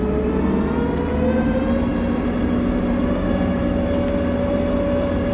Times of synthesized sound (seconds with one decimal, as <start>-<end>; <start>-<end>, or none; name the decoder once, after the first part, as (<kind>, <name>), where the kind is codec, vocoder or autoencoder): none